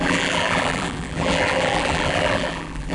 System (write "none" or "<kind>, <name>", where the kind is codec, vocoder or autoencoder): vocoder, BigVGAN v2